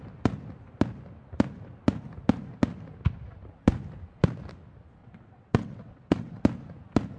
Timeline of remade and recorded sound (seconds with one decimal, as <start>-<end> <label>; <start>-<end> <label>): 0.0-5.0 recorded; 5.0-6.4 remade; 6.4-7.2 recorded